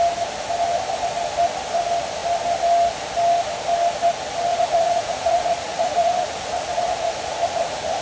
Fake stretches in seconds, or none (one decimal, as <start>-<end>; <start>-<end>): 4.5-8.0